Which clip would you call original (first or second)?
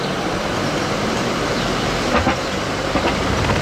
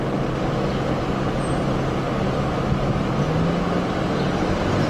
second